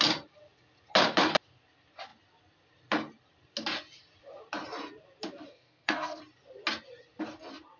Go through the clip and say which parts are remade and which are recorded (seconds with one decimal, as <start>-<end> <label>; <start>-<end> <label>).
0.0-5.5 recorded; 5.5-6.2 remade; 6.2-7.8 recorded